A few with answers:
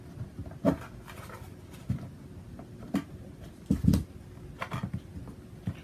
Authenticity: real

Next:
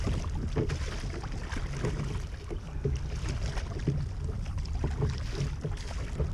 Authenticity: real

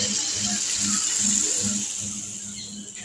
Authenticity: real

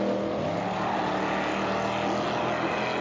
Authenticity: real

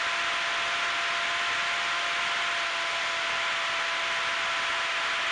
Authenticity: real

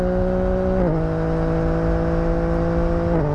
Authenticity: real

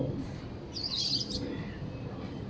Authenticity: real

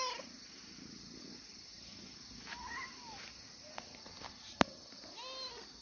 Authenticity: real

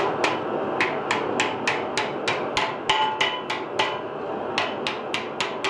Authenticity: real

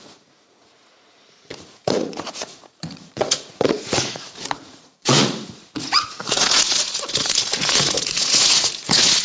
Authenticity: fake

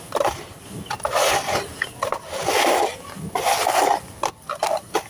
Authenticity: real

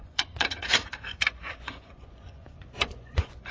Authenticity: fake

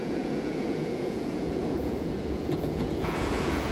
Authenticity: fake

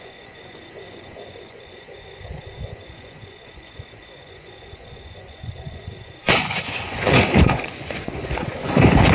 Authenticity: fake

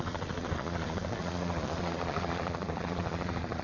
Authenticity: fake